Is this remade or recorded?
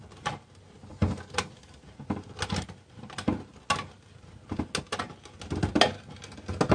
recorded